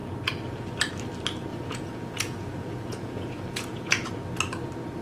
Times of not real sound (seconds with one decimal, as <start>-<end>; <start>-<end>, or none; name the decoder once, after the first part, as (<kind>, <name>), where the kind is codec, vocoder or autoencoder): 1.5-4.1 (vocoder, Vocos)